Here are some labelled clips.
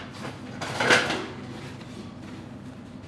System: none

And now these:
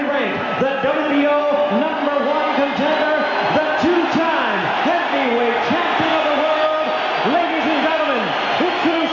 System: none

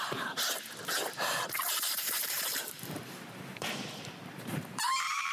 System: vocoder, BigVGAN v2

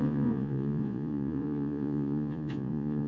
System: vocoder, Vocos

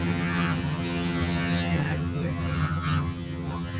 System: vocoder, HiFi-GAN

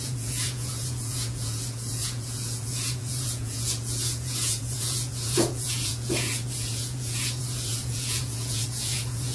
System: vocoder, Vocos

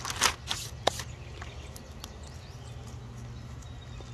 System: none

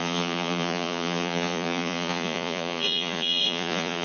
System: vocoder, Vocos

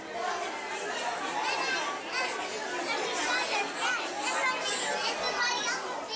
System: none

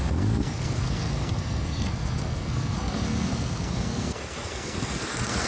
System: codec, SNAC